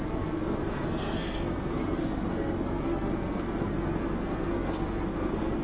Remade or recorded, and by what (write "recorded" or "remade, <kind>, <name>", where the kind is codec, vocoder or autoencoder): remade, codec, SNAC